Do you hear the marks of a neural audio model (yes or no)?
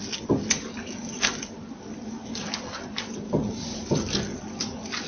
no